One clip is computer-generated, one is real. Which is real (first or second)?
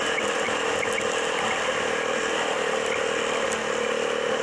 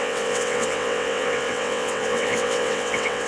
first